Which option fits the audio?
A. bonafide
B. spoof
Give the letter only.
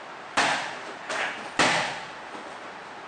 A